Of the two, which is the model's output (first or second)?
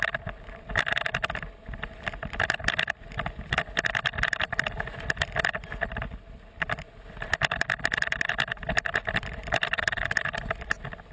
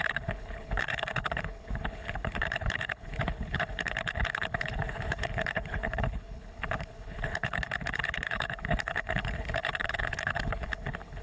second